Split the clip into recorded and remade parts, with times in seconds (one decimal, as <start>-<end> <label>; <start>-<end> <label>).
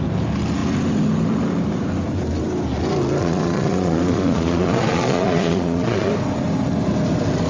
0.0-3.2 recorded; 3.2-6.1 remade; 6.1-7.5 recorded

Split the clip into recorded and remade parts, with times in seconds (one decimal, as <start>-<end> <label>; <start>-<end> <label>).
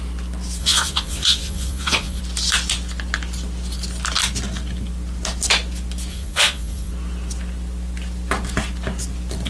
0.0-0.6 recorded; 0.6-2.2 remade; 2.2-6.1 recorded; 6.1-6.9 remade; 6.9-9.5 recorded